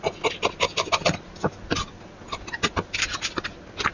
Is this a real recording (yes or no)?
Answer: yes